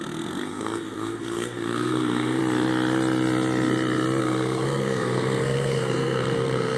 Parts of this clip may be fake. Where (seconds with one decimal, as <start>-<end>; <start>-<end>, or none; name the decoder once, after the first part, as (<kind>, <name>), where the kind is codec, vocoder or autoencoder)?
0.0-2.4 (codec, SNAC); 4.2-6.8